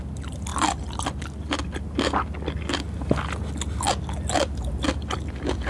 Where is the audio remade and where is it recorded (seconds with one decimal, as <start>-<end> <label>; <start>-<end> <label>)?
0.0-5.7 recorded